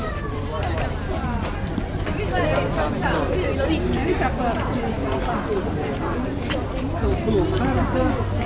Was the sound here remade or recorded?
recorded